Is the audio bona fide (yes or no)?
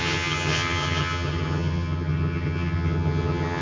no